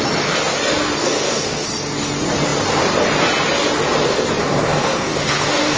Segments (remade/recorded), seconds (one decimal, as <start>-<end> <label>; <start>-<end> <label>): 0.0-1.0 recorded; 1.0-1.7 remade; 1.7-4.4 recorded; 4.4-5.8 remade